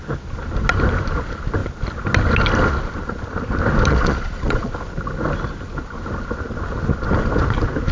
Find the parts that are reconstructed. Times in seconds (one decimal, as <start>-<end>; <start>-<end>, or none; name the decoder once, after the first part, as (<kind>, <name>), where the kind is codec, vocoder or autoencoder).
3.9-4.7 (vocoder, Vocos)